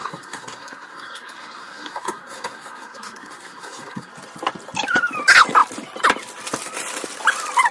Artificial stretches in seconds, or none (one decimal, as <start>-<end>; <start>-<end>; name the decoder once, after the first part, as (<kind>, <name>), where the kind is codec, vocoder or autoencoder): 0.0-4.1 (codec, SNAC)